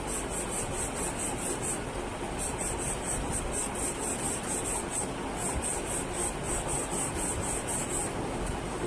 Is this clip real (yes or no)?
yes